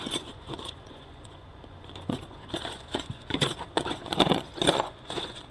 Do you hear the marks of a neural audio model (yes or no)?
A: yes